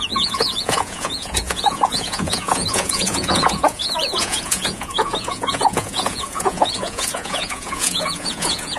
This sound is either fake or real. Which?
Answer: fake